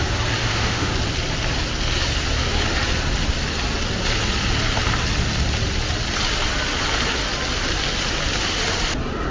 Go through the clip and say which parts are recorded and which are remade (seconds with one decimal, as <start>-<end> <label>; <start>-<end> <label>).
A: 0.0-0.4 recorded; 0.4-0.9 remade; 0.9-9.3 recorded